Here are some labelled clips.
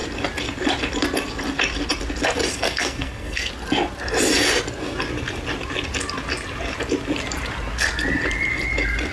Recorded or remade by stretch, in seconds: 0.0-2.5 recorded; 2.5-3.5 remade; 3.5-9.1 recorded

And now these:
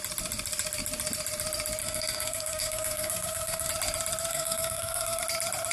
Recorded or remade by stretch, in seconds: 0.0-1.8 recorded; 1.8-3.7 remade; 3.7-4.3 recorded; 4.3-5.2 remade; 5.2-5.7 recorded

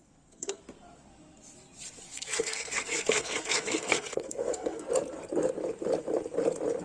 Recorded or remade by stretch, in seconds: 0.0-0.6 remade; 0.6-2.1 recorded; 2.1-4.9 remade; 4.9-6.8 recorded

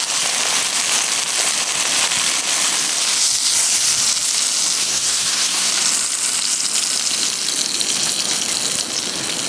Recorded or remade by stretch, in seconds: 0.0-4.8 recorded; 4.8-5.7 remade; 5.7-9.5 recorded

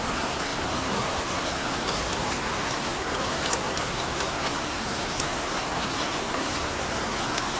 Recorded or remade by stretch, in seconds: 0.0-7.6 remade